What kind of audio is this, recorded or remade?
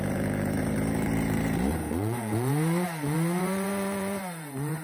remade